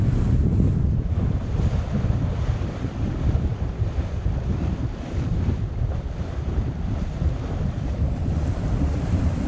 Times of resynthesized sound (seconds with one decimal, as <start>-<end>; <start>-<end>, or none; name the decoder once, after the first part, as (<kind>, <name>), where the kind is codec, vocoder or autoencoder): 0.0-0.5 (vocoder, BigVGAN v2); 1.3-9.5

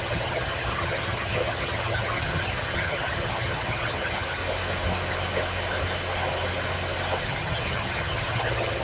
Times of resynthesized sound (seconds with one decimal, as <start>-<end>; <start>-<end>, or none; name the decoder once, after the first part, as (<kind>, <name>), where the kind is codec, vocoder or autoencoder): 0.0-4.4 (vocoder, HiFi-GAN); 7.2-8.8

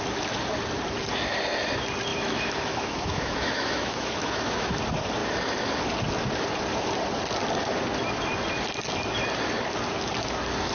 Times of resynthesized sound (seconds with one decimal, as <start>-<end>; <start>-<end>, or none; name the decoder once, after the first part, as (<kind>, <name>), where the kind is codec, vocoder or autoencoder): 2.1-4.7 (autoencoder, DAC-VAE)

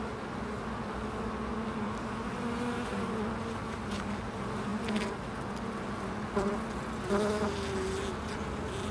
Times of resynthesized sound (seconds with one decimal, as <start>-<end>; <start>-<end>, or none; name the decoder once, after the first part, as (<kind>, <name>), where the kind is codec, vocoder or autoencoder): none

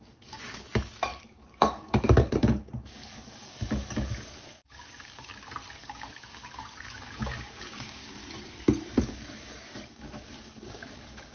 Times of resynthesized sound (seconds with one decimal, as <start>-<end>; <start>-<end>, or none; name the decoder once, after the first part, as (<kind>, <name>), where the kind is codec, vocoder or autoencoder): 0.0-5.3 (codec, DAC); 5.8-8.2; 9.0-11.3

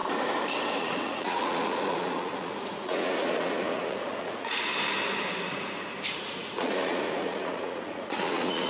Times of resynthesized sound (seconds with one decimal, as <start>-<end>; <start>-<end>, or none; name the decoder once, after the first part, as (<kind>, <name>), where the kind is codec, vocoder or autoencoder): 0.8-4.7 (vocoder, Vocos); 6.1-8.7